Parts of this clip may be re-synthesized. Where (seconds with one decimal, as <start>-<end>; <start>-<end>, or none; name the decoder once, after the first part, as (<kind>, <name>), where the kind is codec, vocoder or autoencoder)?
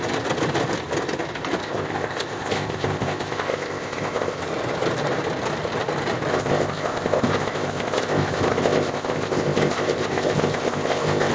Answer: 1.6-4.4 (codec, ZipCodec); 6.3-11.3